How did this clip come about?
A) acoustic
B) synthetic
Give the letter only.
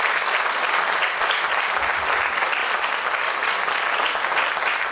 B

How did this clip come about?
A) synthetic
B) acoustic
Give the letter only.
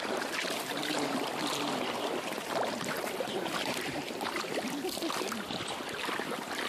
A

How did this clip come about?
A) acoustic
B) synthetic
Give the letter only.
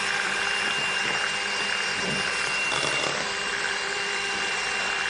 B